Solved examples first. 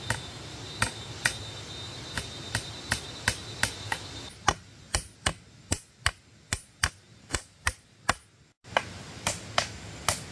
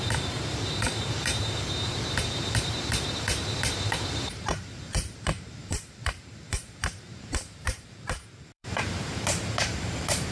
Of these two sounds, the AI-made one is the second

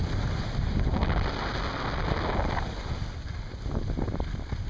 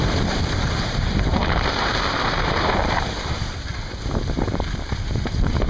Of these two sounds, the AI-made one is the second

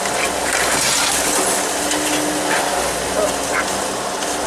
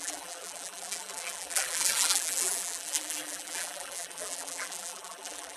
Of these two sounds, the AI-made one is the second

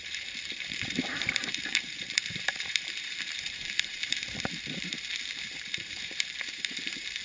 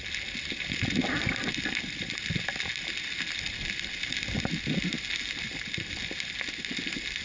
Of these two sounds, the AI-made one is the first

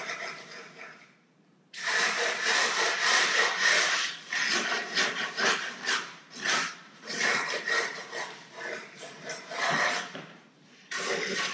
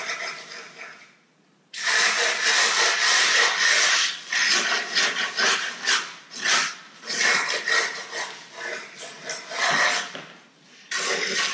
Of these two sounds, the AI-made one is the first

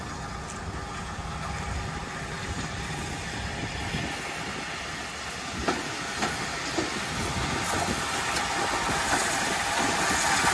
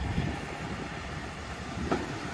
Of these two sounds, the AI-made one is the second